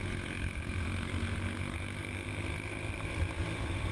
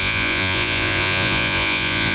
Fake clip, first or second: second